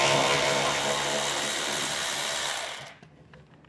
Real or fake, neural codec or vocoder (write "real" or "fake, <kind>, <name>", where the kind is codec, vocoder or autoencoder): real